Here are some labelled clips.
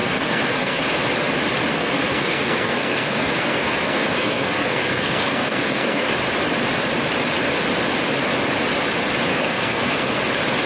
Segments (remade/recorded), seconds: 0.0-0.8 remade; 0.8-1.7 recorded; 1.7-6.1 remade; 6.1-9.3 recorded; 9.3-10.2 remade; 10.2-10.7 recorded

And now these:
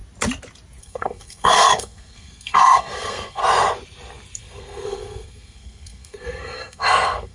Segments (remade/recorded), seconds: 0.0-0.8 recorded; 0.8-3.4 remade; 3.4-4.4 recorded; 4.4-7.3 remade

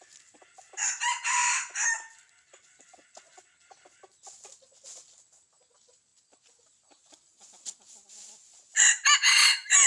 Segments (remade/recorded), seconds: 0.0-9.9 recorded